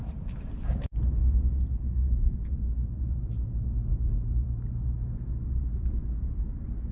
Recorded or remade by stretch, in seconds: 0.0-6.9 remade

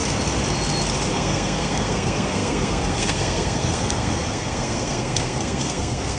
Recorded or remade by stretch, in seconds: 0.0-1.1 recorded; 1.1-6.2 remade